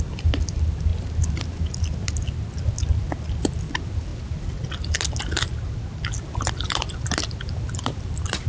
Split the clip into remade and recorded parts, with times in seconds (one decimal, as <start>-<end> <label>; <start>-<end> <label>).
0.0-0.9 remade; 0.9-1.4 recorded; 1.4-2.0 remade; 2.0-3.4 recorded; 3.4-4.1 remade; 4.1-6.5 recorded; 6.5-8.5 remade

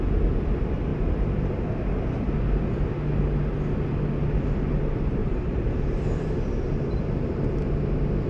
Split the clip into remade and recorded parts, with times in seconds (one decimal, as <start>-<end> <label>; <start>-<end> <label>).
0.0-0.9 recorded; 0.9-2.0 remade; 2.0-5.2 recorded; 5.2-7.4 remade; 7.4-8.3 recorded

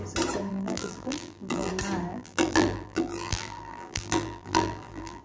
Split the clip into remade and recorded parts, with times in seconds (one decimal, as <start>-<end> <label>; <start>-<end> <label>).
0.0-0.5 recorded; 0.5-1.7 remade; 1.7-2.1 recorded; 2.1-5.2 remade

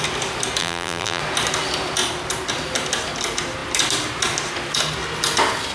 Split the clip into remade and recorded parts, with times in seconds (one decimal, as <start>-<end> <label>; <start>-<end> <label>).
0.0-0.6 recorded; 0.6-1.2 remade; 1.2-5.7 recorded